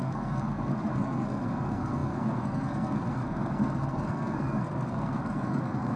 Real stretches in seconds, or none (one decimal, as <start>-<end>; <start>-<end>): none